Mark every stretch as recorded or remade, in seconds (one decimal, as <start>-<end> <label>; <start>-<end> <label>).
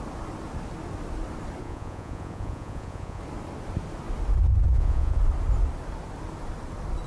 0.0-1.6 recorded; 1.6-3.2 remade; 3.2-4.7 recorded; 4.7-5.2 remade; 5.2-7.1 recorded